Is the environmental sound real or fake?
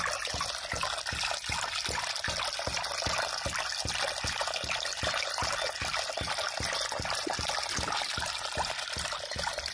real